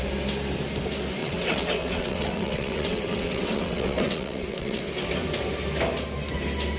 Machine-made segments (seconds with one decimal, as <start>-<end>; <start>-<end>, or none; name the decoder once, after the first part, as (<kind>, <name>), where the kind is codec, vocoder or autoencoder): 1.2-4.8 (vocoder, WaveNeXt)